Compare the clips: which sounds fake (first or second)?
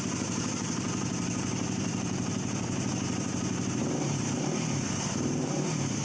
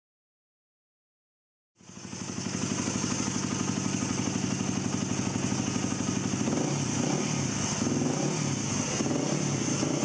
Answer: first